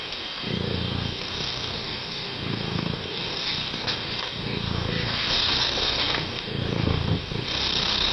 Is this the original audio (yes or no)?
no